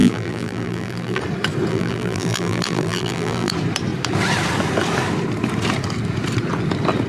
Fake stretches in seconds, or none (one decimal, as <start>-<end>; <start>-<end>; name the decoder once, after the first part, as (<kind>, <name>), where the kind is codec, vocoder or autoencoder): 0.0-1.2 (vocoder, BigVGAN v2); 1.7-3.5